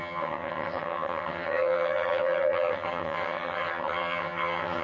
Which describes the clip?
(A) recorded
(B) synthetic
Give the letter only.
B